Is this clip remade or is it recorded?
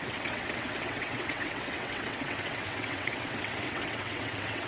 remade